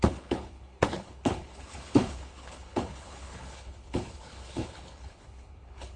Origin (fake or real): fake